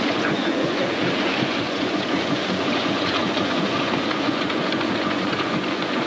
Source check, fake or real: fake